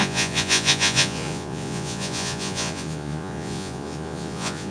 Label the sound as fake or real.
fake